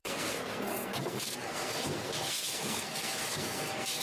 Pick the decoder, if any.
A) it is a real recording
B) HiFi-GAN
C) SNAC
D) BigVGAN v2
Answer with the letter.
C